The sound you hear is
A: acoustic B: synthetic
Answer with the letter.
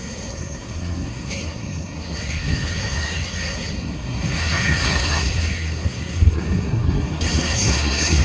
B